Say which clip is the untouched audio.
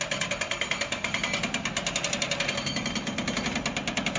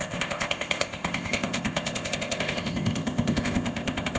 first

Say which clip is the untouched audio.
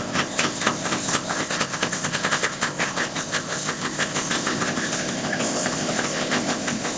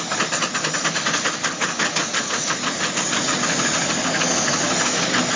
second